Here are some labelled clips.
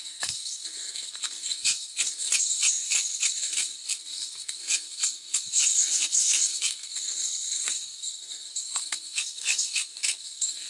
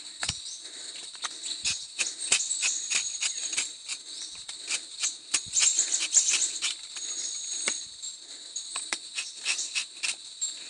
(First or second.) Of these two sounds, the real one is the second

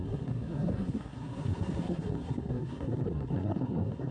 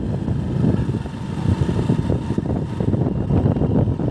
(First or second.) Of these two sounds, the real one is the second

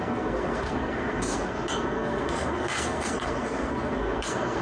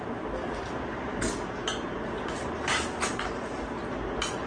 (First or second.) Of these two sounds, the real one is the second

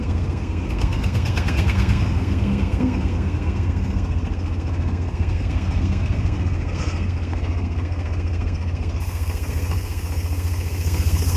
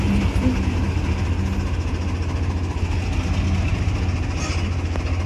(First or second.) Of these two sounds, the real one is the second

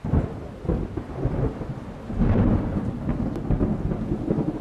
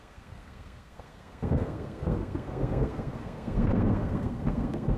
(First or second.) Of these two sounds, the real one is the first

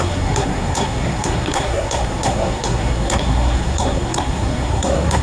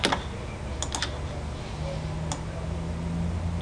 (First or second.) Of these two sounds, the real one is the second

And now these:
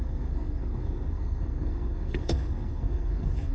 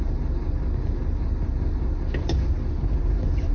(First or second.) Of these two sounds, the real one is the second